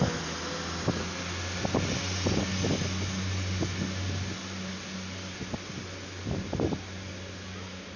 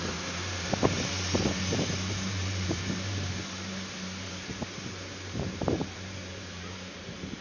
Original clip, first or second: first